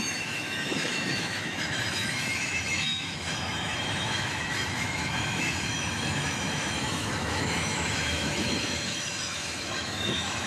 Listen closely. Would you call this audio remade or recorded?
remade